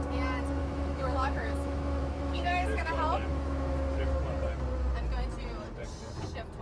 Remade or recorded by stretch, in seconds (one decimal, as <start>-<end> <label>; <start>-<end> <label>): 0.0-0.6 recorded; 0.6-2.9 remade; 2.9-3.3 recorded; 3.3-4.0 remade; 4.0-6.6 recorded